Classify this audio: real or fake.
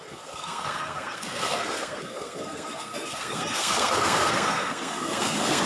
fake